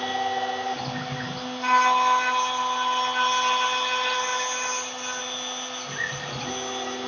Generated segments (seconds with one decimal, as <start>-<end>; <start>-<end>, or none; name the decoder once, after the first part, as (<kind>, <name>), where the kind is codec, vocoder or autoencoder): none

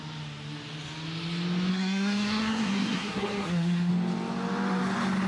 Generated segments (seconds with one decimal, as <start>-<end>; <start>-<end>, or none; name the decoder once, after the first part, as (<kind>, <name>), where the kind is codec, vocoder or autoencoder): 1.7-3.9 (codec, SNAC)